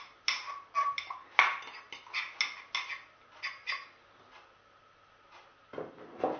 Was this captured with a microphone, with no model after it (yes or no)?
yes